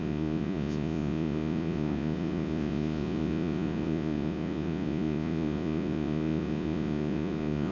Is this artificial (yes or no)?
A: yes